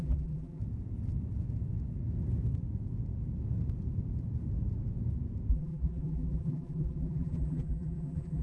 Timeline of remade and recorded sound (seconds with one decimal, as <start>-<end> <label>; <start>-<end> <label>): 0.0-0.6 remade; 0.6-5.5 recorded; 5.5-8.4 remade